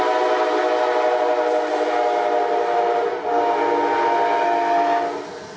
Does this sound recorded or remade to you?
recorded